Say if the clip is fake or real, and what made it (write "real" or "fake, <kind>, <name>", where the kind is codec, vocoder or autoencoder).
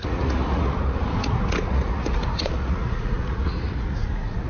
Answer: fake, vocoder, Vocos